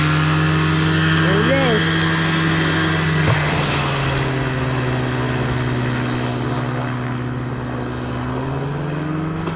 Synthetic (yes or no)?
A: no